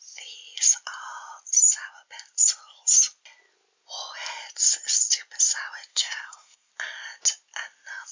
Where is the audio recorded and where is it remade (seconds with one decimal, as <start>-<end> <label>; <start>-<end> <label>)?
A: 0.0-5.9 recorded; 5.9-6.7 remade; 6.7-8.1 recorded